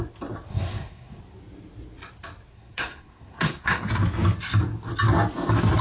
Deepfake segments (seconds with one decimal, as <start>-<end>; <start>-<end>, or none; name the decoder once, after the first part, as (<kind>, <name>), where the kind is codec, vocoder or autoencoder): 0.5-1.2 (codec, SNAC); 2.5-3.9